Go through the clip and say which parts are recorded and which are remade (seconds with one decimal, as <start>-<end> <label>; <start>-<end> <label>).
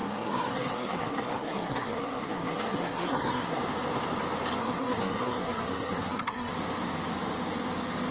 0.0-3.6 remade; 3.6-4.6 recorded; 4.6-6.5 remade; 6.5-8.1 recorded